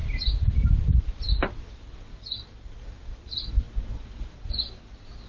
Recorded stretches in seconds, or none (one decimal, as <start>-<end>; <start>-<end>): 1.6-5.3